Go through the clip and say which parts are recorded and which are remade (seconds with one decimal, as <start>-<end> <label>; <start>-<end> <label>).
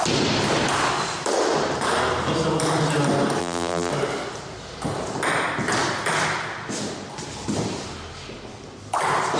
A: 0.0-3.4 recorded; 3.4-3.9 remade; 3.9-9.4 recorded